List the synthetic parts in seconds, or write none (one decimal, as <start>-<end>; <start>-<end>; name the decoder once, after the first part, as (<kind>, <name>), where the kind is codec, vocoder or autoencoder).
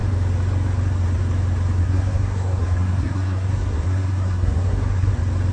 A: 1.8-5.1 (codec, SNAC)